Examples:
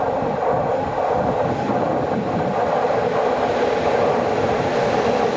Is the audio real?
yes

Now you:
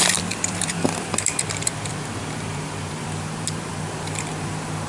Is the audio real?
no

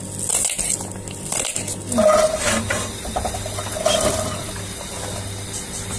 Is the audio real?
yes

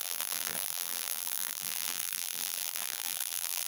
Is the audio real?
no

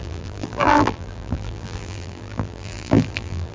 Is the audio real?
no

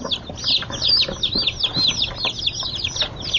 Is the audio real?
yes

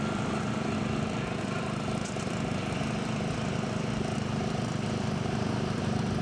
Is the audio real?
yes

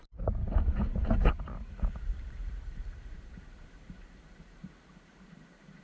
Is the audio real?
no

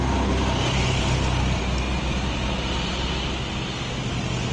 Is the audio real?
yes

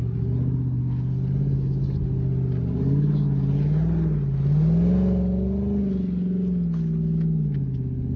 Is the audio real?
yes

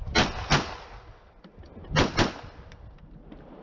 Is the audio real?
yes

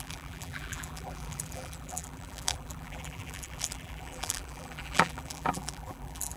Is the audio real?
no